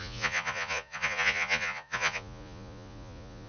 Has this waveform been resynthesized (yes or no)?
yes